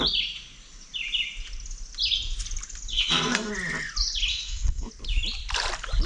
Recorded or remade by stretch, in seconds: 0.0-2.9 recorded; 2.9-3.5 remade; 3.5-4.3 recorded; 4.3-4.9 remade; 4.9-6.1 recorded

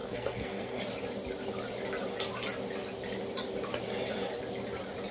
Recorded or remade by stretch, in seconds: 0.0-0.8 remade; 0.8-5.1 recorded

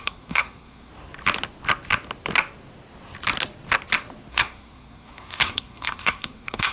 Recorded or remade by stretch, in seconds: 0.0-0.9 remade; 0.9-4.3 recorded; 4.3-6.7 remade

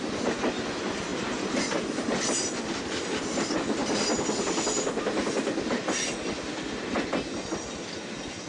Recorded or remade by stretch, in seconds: 0.0-8.5 recorded